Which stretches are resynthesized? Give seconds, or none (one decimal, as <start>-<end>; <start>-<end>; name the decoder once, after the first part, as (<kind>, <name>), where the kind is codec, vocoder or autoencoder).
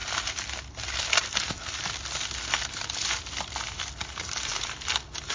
none